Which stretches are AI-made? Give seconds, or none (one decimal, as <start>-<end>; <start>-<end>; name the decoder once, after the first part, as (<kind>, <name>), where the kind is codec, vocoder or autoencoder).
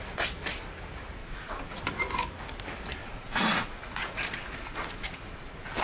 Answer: 1.2-1.8 (vocoder, Vocos); 3.0-5.8